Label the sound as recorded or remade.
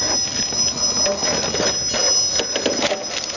recorded